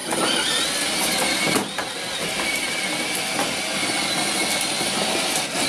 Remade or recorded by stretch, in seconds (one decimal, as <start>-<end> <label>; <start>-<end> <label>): 0.0-5.7 recorded